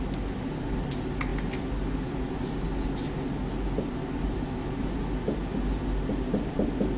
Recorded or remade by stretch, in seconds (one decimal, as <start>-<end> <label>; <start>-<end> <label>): 0.0-7.0 recorded